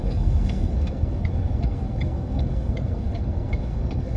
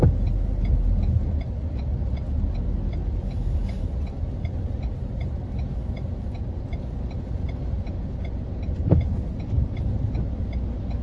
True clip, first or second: second